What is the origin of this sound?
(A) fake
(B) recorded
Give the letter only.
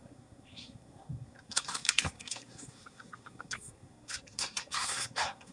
A